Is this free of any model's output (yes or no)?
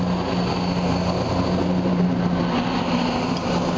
yes